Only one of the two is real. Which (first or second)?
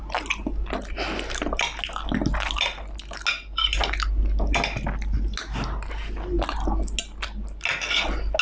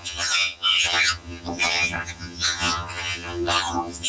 first